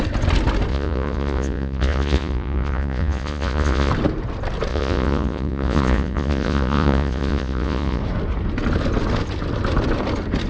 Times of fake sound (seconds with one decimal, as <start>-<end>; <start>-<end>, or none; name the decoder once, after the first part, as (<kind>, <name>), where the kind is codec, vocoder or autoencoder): 0.7-3.9 (vocoder, Vocos); 4.7-8.0